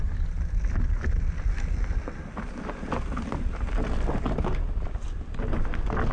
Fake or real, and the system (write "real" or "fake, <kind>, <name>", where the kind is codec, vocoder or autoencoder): real